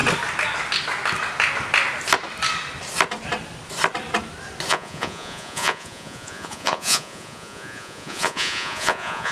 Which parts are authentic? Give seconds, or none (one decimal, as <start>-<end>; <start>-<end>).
0.0-4.7